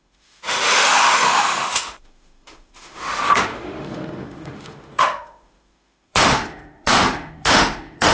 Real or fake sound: fake